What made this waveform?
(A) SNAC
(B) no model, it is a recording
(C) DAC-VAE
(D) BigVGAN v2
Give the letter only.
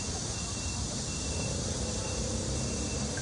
B